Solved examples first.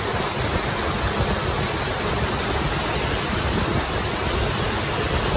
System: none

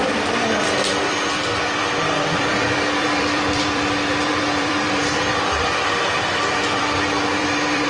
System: vocoder, BigVGAN v2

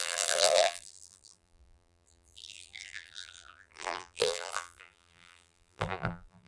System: vocoder, BigVGAN v2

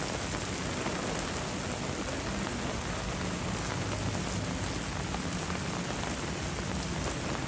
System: none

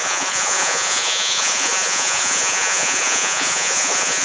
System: vocoder, Vocos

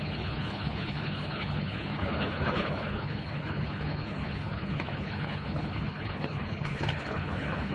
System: codec, HILCodec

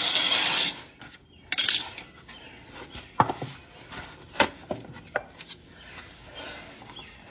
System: none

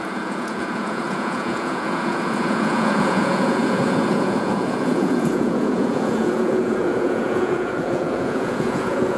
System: vocoder, Vocos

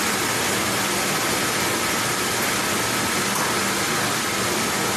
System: none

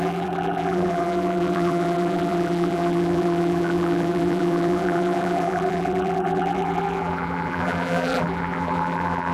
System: vocoder, BigVGAN v2